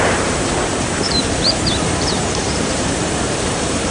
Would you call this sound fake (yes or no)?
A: yes